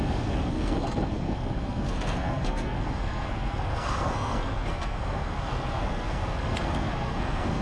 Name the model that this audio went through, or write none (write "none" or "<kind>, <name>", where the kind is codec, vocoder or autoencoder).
codec, SNAC